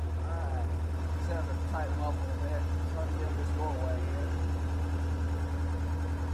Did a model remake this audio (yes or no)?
no